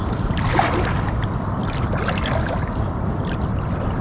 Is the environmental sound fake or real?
real